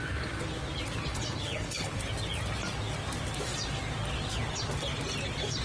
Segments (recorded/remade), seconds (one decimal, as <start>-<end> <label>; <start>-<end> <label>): 0.0-1.1 recorded; 1.1-2.0 remade; 2.0-5.6 recorded

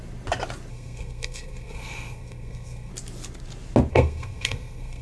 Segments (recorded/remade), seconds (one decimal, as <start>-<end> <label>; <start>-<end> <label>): 0.0-0.7 recorded; 0.7-2.9 remade; 2.9-3.9 recorded; 3.9-5.0 remade

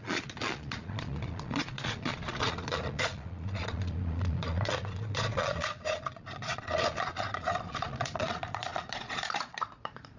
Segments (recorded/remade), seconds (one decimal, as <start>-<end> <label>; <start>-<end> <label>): 0.0-10.2 remade